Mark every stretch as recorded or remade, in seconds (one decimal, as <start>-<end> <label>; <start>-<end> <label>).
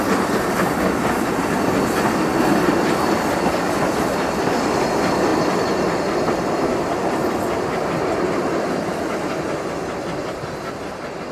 0.0-5.3 recorded; 5.3-5.8 remade; 5.8-11.3 recorded